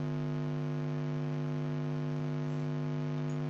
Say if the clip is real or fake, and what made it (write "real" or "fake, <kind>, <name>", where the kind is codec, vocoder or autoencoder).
real